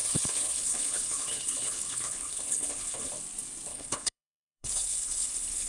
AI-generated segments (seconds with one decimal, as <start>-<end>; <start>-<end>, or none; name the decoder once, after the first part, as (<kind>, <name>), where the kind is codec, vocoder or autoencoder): 0.0-3.1 (codec, HILCodec); 3.7-5.7